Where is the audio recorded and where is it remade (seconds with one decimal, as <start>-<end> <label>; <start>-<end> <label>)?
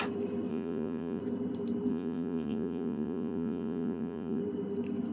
0.0-0.5 recorded; 0.5-1.2 remade; 1.2-1.9 recorded; 1.9-4.4 remade; 4.4-5.1 recorded